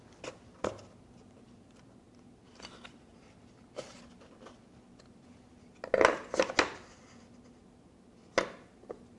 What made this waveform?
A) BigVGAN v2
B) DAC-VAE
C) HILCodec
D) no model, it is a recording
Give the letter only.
D